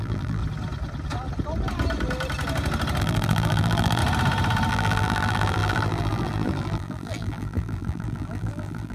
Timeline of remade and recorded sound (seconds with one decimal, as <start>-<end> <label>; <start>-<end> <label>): 0.0-0.4 remade; 0.4-3.0 recorded; 3.0-4.0 remade; 4.0-4.7 recorded; 4.7-8.9 remade